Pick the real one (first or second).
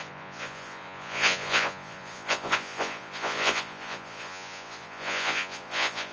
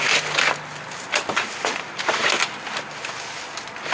second